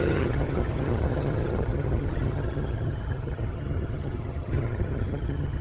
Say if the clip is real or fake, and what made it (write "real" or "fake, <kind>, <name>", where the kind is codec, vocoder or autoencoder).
fake, vocoder, HiFi-GAN